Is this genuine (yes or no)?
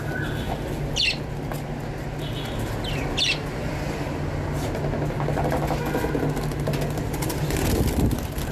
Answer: yes